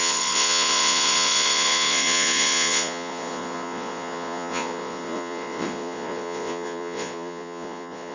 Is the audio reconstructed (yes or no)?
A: yes